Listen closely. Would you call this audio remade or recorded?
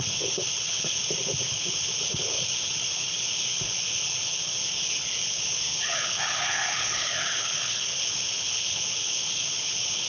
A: remade